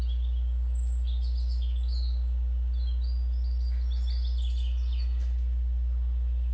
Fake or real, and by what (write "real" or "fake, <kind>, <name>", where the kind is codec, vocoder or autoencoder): real